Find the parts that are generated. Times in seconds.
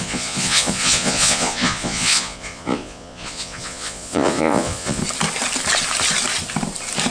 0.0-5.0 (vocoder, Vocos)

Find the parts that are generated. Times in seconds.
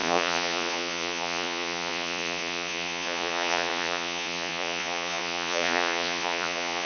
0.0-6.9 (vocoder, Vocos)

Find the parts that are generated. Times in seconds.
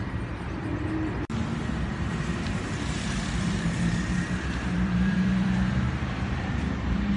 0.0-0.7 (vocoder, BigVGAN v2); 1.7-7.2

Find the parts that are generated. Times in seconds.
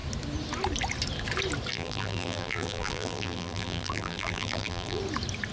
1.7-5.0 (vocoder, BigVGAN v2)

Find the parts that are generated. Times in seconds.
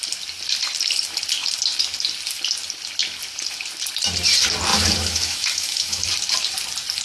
4.7-6.1 (autoencoder, DAC-VAE)